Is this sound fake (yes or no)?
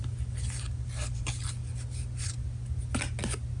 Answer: no